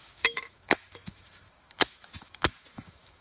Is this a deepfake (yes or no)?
yes